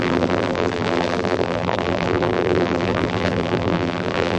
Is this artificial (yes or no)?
yes